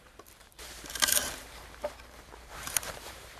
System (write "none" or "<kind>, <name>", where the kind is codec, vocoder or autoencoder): vocoder, BigVGAN v2